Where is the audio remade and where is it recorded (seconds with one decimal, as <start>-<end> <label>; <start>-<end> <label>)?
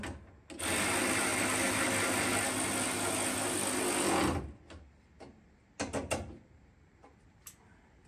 0.0-8.1 recorded